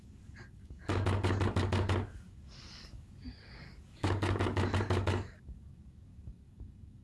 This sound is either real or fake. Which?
fake